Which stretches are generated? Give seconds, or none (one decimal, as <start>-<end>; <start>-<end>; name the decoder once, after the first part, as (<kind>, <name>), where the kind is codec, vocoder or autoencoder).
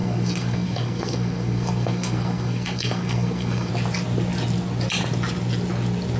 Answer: 0.0-3.7 (codec, SNAC)